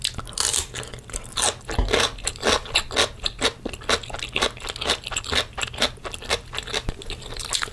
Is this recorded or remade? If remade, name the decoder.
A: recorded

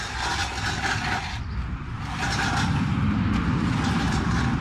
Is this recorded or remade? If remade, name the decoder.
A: recorded